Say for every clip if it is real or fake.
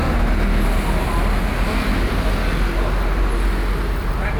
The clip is real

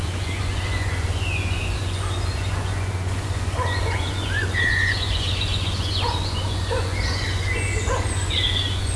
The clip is fake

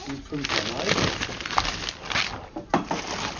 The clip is real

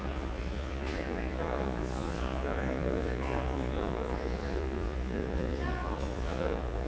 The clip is fake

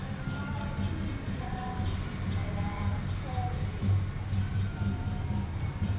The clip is real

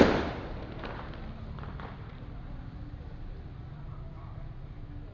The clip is real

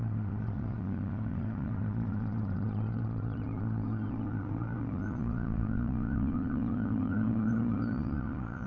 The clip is fake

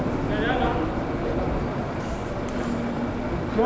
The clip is real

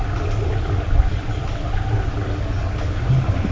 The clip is real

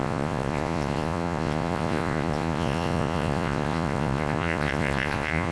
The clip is fake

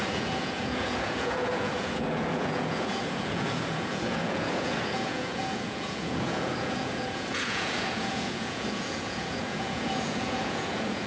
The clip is fake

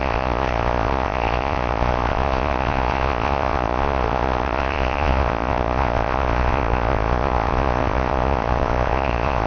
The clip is fake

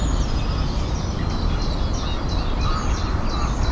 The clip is real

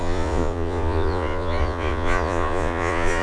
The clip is fake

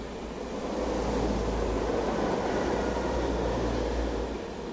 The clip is real